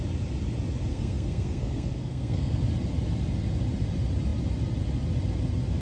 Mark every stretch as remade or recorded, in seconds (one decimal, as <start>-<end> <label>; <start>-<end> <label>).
0.0-0.9 recorded; 0.9-2.6 remade; 2.6-5.8 recorded